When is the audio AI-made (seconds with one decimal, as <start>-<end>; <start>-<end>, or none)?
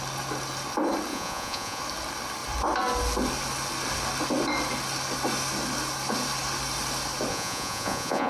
1.1-1.8; 7.3-8.3